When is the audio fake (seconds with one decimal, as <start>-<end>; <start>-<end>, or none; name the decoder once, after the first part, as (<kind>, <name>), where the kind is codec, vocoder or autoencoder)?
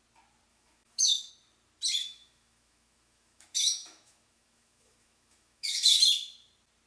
0.5-1.3 (autoencoder, DAC-VAE); 2.0-6.0